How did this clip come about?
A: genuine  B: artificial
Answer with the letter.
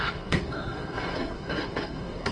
B